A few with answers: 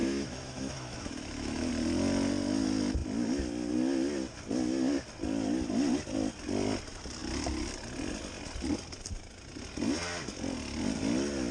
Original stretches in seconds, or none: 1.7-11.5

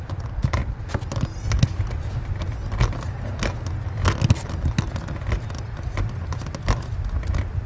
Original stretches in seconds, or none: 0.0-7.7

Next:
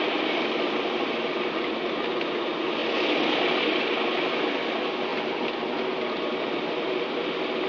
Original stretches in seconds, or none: 0.0-7.7

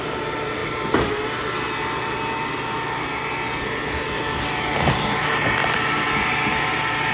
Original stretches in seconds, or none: 0.0-7.1

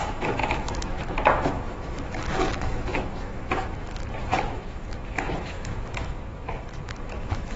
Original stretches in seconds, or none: none

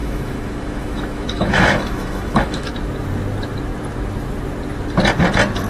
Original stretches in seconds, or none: 2.7-5.7

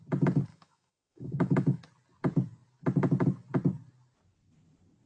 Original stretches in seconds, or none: 0.0-0.5; 1.8-5.1

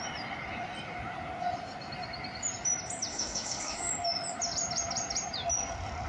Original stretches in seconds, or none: 0.0-3.1; 3.9-6.1